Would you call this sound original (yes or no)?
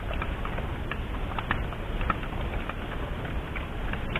yes